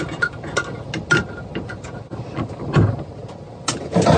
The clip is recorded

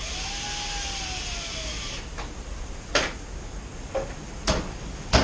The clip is recorded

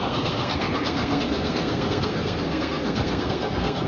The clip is remade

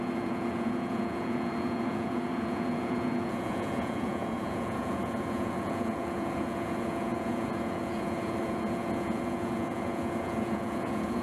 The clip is remade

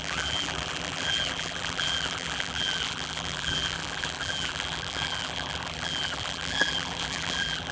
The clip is remade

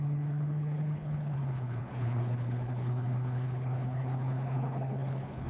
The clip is remade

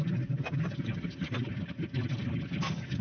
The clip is recorded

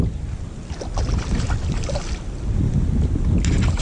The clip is recorded